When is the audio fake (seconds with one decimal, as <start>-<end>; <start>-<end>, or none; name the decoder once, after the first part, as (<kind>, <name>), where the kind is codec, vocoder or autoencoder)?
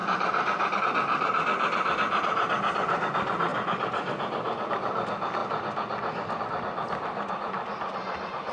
0.0-0.8 (vocoder, BigVGAN v2)